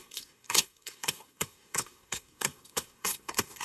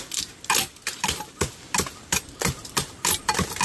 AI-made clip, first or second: first